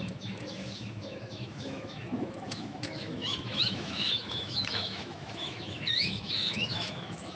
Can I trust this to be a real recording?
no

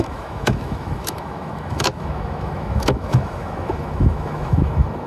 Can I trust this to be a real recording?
no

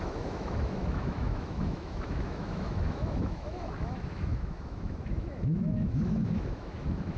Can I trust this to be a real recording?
no